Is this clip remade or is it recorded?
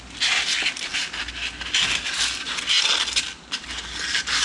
recorded